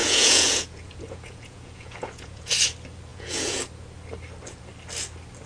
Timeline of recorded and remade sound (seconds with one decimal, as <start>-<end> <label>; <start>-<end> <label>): 0.0-2.5 remade; 2.5-3.1 recorded; 3.1-3.6 remade; 3.6-5.5 recorded